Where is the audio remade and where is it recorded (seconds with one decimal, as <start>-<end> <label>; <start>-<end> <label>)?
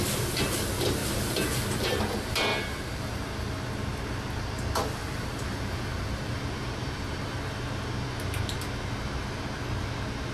0.0-1.0 recorded; 1.0-2.0 remade; 2.0-2.5 recorded; 2.5-3.0 remade; 3.0-5.0 recorded; 5.0-7.4 remade; 7.4-10.3 recorded